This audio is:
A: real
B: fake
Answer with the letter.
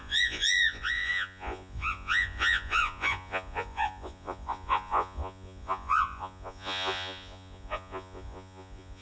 B